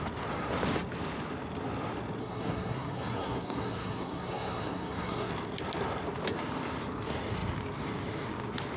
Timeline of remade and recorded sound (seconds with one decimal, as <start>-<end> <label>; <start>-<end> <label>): 0.0-2.2 recorded; 2.2-5.3 remade; 5.3-8.8 recorded